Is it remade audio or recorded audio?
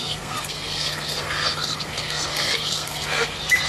remade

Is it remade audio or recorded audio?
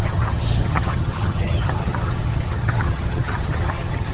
remade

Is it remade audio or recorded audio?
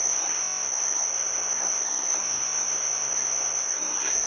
remade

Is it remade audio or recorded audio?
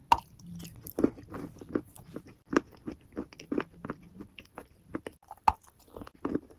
recorded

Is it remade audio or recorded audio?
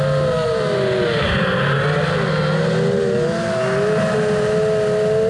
recorded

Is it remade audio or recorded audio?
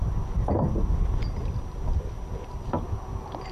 recorded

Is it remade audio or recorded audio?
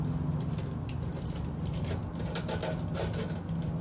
recorded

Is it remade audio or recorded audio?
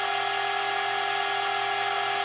recorded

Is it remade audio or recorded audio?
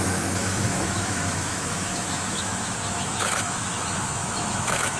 remade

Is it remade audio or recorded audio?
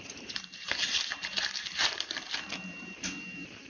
remade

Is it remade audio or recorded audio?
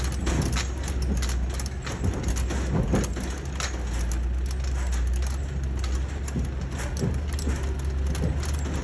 recorded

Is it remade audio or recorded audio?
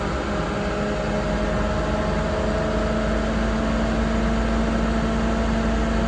recorded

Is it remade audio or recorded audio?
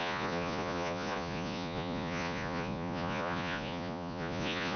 remade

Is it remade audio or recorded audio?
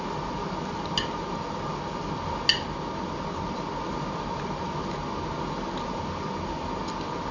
recorded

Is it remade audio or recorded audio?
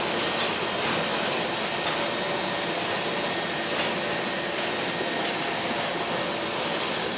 recorded